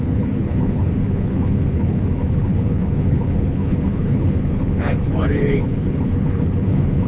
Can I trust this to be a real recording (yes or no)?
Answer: no